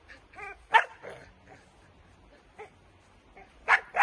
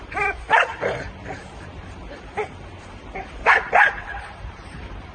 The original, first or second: first